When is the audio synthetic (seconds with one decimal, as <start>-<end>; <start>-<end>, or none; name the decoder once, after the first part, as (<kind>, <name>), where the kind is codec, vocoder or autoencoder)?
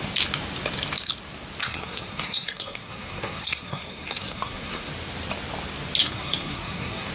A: 1.6-4.9 (codec, SNAC); 6.0-7.1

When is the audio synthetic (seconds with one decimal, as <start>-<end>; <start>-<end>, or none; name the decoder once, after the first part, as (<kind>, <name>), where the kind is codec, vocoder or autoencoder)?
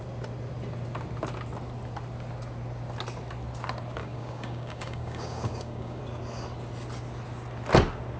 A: 4.0-6.0 (codec, DAC)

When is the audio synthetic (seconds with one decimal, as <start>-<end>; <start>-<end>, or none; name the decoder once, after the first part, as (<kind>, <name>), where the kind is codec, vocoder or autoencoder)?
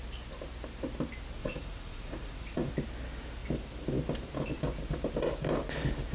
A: 1.4-2.7 (vocoder, Vocos)